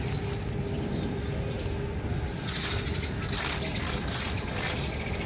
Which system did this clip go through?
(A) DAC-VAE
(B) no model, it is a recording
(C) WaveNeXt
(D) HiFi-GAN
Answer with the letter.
B